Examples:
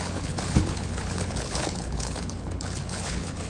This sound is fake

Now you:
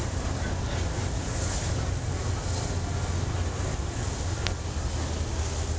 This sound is real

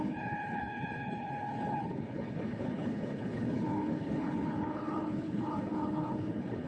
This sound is fake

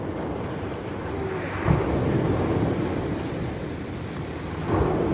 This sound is real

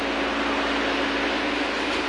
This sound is real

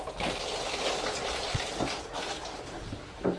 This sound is real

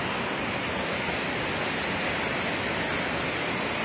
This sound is real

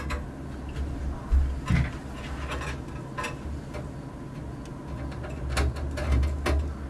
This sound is real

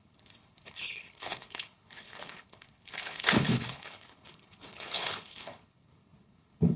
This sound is fake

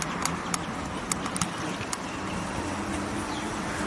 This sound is real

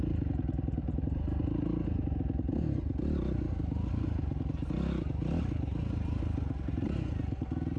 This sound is real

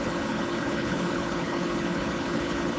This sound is fake